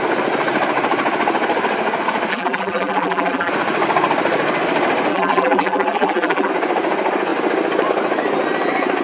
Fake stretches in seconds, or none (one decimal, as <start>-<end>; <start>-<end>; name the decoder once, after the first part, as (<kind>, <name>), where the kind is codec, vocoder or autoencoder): 2.3-3.5 (vocoder, BigVGAN v2); 5.1-6.5